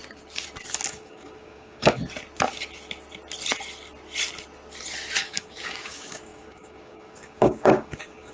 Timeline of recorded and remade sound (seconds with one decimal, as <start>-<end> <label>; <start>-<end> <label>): 0.0-0.9 recorded; 0.9-2.0 remade; 2.0-5.2 recorded; 5.2-8.3 remade